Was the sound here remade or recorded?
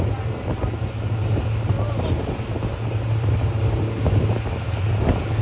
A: recorded